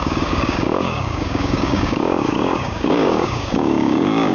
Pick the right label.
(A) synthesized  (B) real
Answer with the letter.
A